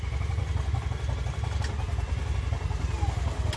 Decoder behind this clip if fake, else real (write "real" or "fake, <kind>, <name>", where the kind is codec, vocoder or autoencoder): real